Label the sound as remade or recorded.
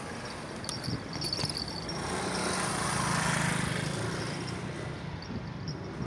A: recorded